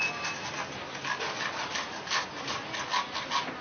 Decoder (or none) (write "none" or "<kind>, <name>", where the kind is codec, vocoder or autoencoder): none